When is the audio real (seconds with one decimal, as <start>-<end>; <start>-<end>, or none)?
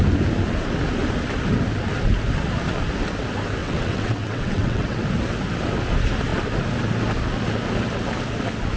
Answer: 0.0-3.6; 5.0-8.8